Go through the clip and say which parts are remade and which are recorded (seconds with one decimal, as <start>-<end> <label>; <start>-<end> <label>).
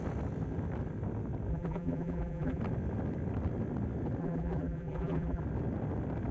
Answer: 0.0-1.5 recorded; 1.5-2.6 remade; 2.6-4.2 recorded; 4.2-5.4 remade; 5.4-6.3 recorded